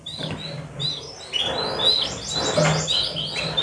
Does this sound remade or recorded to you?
recorded